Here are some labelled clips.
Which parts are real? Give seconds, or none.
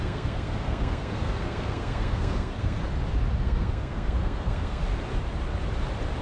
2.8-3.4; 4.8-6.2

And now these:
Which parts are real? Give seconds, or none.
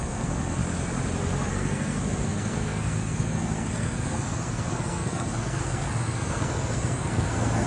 0.6-1.5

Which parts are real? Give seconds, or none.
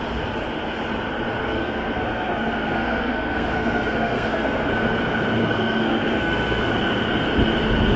0.0-1.4; 5.0-5.4; 6.7-8.0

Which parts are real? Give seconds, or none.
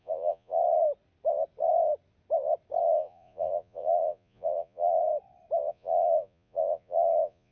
0.6-2.8; 5.0-5.7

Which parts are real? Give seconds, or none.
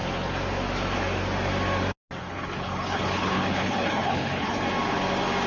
0.0-2.2; 4.6-5.5